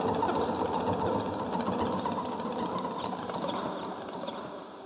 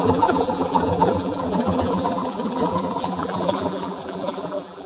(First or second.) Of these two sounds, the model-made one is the second